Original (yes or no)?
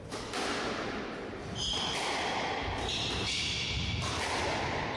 yes